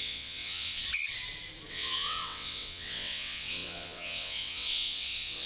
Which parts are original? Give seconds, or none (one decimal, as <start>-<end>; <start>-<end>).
0.8-1.7